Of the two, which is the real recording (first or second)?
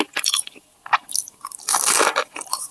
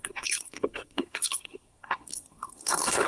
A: first